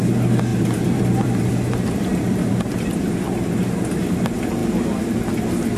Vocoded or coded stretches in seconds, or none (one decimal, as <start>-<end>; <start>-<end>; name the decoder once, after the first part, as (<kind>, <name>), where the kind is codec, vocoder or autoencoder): 0.5-1.5 (vocoder, BigVGAN v2); 2.1-3.9